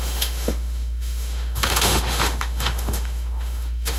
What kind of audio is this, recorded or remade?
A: remade